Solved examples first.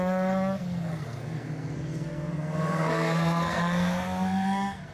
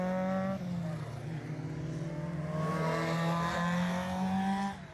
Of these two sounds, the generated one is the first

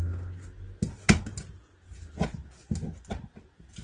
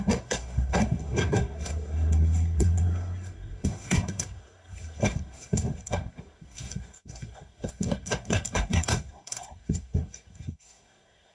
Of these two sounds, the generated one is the second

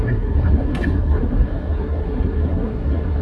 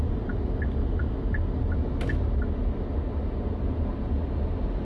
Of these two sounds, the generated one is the first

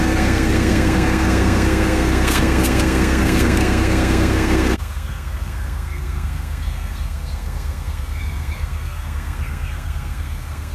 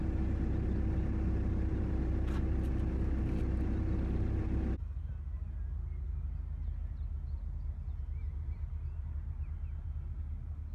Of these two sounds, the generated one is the first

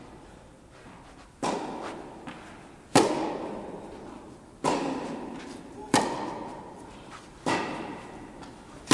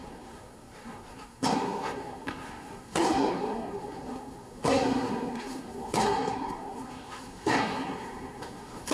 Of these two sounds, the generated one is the second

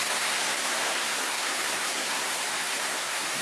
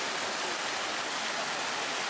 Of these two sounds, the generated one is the first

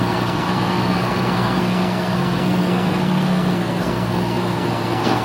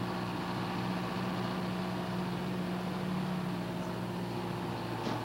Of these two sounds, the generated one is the first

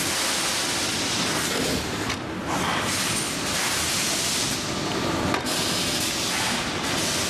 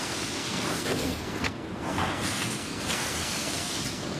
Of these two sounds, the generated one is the second